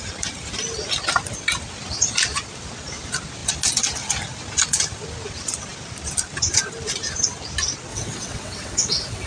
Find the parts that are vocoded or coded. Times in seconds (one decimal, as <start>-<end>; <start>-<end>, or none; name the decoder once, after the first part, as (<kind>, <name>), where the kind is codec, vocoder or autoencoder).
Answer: 7.9-9.3 (vocoder, WaveNeXt)